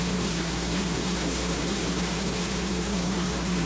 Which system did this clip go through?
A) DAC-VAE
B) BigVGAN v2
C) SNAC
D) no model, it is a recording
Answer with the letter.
C